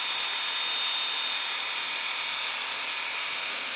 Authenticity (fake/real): real